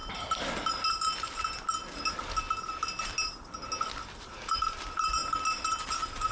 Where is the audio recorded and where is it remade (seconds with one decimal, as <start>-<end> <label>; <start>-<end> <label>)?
0.0-6.3 recorded